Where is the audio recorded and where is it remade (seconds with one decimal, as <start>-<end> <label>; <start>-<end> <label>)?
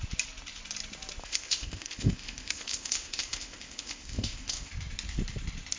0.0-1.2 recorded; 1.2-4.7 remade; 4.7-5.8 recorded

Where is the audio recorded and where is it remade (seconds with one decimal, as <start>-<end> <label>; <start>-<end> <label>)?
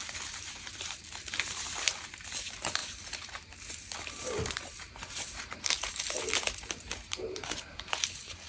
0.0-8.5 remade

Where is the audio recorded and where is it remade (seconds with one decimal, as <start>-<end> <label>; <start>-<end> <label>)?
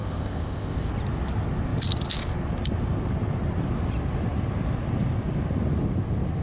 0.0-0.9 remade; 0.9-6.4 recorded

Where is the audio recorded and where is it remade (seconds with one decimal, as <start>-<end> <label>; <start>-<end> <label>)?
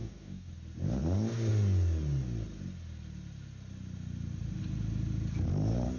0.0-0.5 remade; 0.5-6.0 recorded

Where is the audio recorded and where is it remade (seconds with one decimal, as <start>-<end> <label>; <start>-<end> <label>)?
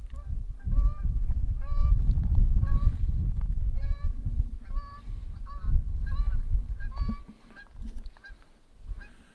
0.0-9.3 recorded